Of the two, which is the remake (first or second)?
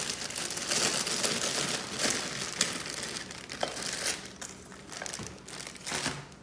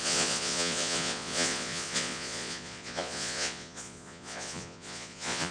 second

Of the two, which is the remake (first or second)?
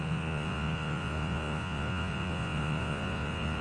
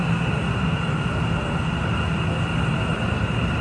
first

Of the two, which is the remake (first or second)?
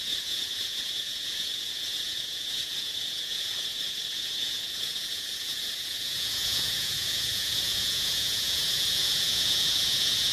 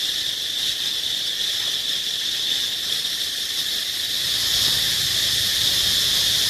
first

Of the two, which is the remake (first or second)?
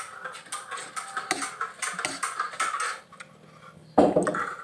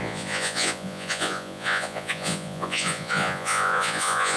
second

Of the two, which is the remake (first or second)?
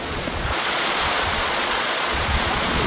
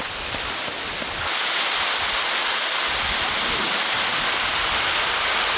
first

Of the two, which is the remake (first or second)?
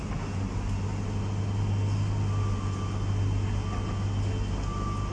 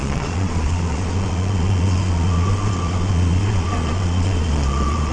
second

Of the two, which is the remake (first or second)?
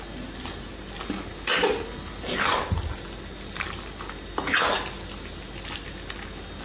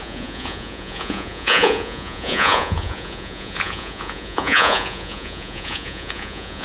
second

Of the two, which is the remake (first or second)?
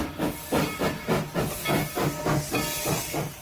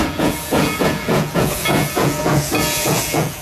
second